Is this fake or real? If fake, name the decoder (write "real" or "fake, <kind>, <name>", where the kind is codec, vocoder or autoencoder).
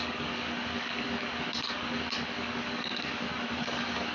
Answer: fake, codec, DAC